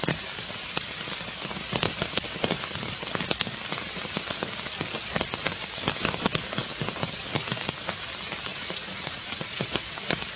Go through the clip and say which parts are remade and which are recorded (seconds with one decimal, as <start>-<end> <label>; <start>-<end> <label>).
0.0-8.5 recorded; 8.5-9.6 remade; 9.6-10.4 recorded

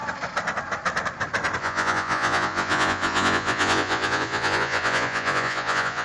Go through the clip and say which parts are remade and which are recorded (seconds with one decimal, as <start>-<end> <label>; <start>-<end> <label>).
0.0-1.6 recorded; 1.6-6.0 remade